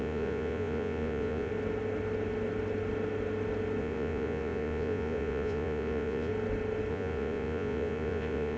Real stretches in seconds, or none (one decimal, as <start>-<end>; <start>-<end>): 1.5-3.8; 6.3-6.9